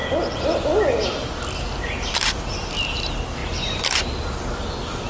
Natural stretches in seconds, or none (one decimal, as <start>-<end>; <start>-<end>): 0.0-5.1